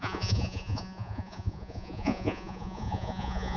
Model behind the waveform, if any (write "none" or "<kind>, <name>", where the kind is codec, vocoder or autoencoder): vocoder, Vocos